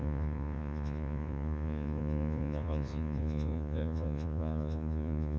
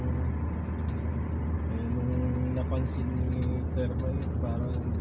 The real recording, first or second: second